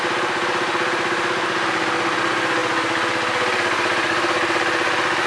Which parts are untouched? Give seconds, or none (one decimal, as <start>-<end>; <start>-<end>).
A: 0.0-5.3